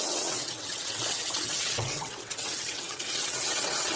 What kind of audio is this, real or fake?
fake